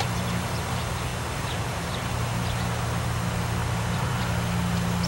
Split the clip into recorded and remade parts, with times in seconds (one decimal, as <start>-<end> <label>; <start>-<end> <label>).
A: 0.0-1.1 recorded; 1.1-2.0 remade; 2.0-3.6 recorded; 3.6-4.2 remade; 4.2-5.1 recorded